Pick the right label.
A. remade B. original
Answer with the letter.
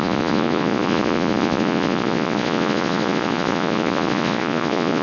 A